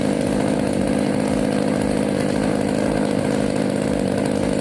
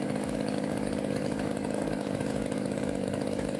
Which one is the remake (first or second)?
second